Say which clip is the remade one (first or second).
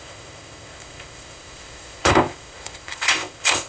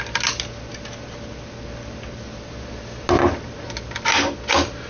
first